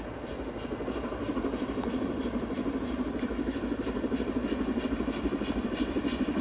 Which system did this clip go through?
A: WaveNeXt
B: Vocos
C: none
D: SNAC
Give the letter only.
C